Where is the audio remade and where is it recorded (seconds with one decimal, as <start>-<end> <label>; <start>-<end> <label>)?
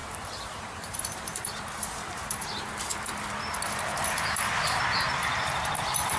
0.0-3.4 remade; 3.4-3.9 recorded; 3.9-4.8 remade; 4.8-5.2 recorded; 5.2-6.2 remade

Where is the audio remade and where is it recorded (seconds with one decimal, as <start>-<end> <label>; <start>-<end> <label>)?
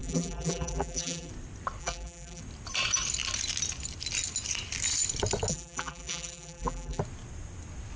0.0-1.3 remade; 1.3-1.8 recorded; 1.8-2.4 remade; 2.4-5.5 recorded; 5.5-7.0 remade; 7.0-8.0 recorded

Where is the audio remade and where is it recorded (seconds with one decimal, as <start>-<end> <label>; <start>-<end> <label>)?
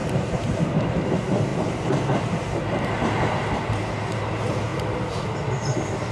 0.0-0.5 remade; 0.5-6.1 recorded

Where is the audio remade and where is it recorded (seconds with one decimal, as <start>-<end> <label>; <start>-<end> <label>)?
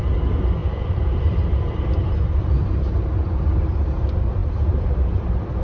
0.0-0.6 recorded; 0.6-2.1 remade; 2.1-4.4 recorded; 4.4-5.6 remade